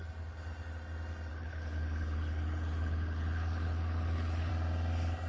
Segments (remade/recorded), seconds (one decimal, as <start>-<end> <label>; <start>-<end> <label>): 0.0-1.3 recorded; 1.3-4.5 remade; 4.5-5.3 recorded